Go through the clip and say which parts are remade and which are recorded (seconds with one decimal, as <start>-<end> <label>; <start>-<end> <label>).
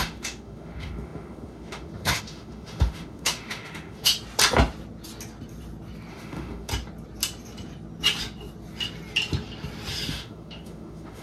0.0-4.1 remade; 4.1-6.1 recorded; 6.1-6.7 remade; 6.7-10.1 recorded; 10.1-11.2 remade